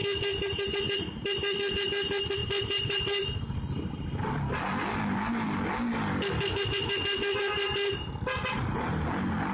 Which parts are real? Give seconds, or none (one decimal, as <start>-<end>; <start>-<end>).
0.0-9.5